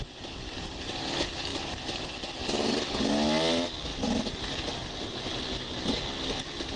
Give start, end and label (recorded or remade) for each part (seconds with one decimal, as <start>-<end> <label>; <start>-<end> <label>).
0.0-6.8 recorded